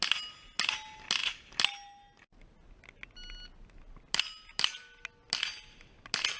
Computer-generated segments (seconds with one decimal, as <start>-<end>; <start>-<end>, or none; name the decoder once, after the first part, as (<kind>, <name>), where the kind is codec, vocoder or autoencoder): none